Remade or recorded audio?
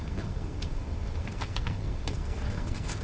remade